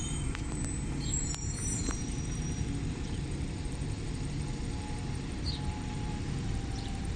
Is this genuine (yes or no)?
no